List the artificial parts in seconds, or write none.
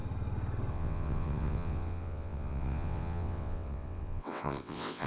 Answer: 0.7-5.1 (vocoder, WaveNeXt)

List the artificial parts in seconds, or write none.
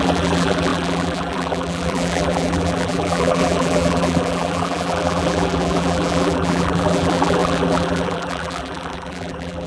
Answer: 0.0-9.7 (vocoder, BigVGAN v2)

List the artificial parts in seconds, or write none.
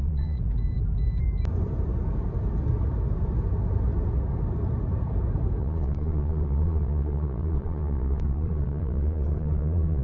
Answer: 0.0-0.4 (vocoder, Vocos); 5.6-10.0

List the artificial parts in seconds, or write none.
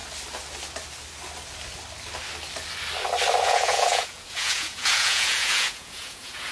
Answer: 3.4-6.5 (vocoder, Vocos)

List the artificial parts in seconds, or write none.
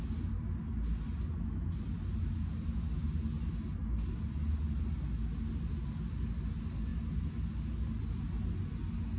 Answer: none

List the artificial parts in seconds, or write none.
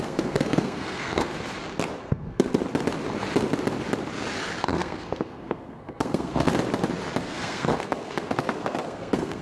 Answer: 0.0-1.3 (codec, SNAC); 2.0-2.6; 4.6-6.5; 7.2-9.4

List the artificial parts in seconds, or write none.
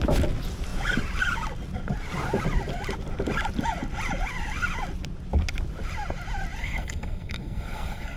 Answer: 6.6-8.2 (codec, SNAC)